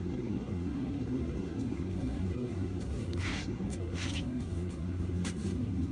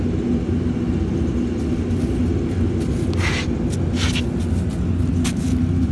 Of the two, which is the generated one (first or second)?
first